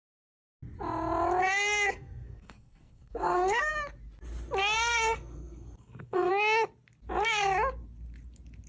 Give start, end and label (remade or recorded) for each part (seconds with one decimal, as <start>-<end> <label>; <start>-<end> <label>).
0.0-1.4 recorded; 1.4-3.7 remade; 3.7-4.6 recorded; 4.6-6.3 remade; 6.3-8.7 recorded